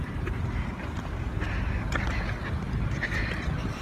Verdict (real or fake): fake